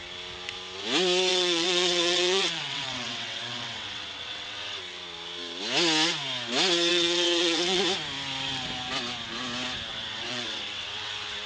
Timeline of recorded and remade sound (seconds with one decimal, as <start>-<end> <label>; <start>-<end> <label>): 0.0-1.3 recorded; 1.3-4.8 remade; 4.8-6.9 recorded; 6.9-7.8 remade; 7.8-9.9 recorded; 9.9-11.1 remade; 11.1-11.5 recorded